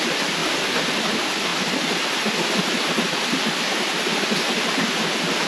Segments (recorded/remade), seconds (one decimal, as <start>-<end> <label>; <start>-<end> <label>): 0.0-5.5 recorded